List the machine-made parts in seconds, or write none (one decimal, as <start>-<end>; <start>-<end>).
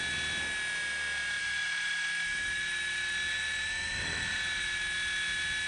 1.4-4.8